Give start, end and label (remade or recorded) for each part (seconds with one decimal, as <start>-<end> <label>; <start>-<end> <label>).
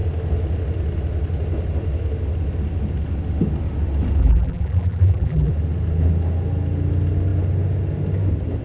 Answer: 0.0-4.2 recorded; 4.2-5.5 remade; 5.5-8.6 recorded